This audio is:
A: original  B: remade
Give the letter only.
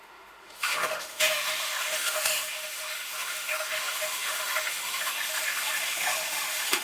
B